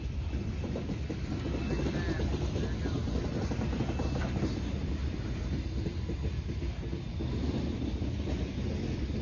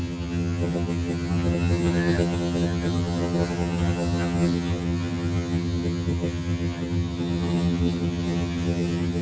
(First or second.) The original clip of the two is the first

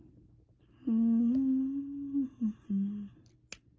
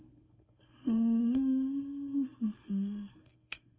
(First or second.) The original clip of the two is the first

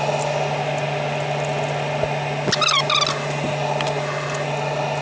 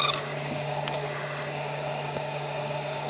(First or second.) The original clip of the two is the first